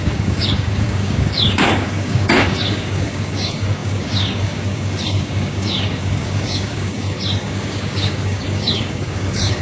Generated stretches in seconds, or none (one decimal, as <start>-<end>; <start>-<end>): 0.0-9.6